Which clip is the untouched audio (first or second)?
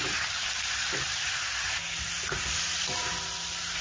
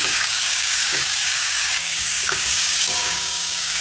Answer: first